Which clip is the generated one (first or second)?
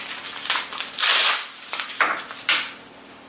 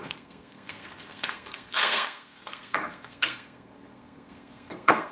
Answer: second